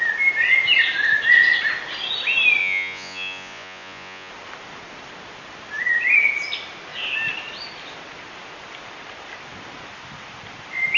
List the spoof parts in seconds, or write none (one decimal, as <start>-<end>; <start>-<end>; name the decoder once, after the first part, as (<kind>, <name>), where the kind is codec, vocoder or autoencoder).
2.6-4.3 (vocoder, Vocos)